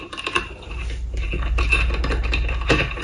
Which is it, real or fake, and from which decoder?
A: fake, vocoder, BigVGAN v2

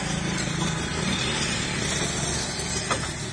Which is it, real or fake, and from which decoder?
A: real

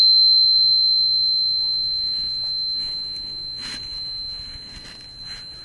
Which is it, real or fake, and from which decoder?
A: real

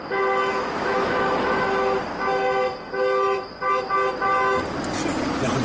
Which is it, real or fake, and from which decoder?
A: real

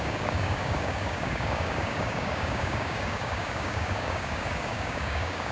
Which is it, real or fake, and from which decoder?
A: fake, codec, DAC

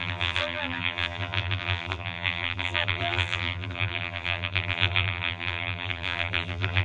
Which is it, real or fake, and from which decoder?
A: fake, vocoder, BigVGAN v2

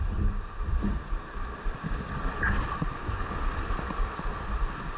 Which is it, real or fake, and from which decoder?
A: real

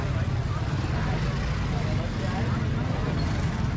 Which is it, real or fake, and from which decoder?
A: real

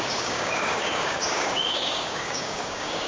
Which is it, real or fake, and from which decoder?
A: fake, codec, DAC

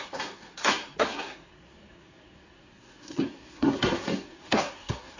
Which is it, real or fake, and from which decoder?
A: fake, codec, SNAC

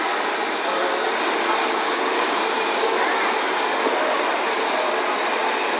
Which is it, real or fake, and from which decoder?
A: real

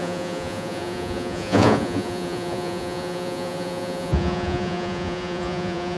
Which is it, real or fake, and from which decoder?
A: fake, vocoder, Vocos